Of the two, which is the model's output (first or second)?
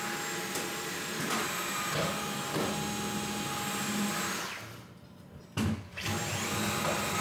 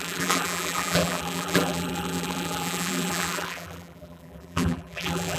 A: second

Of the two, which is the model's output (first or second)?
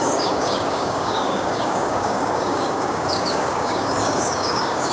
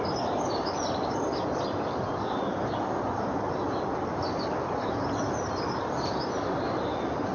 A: first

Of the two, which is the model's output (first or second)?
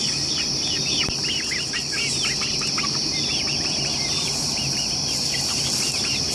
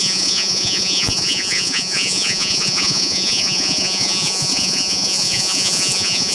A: second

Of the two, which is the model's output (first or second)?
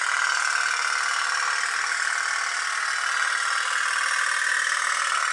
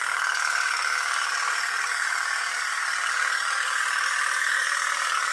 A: second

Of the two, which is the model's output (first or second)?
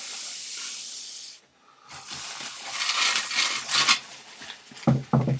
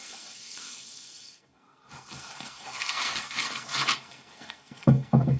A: second